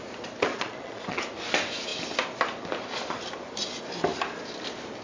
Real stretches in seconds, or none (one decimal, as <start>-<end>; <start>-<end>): 0.0-0.5; 1.2-5.0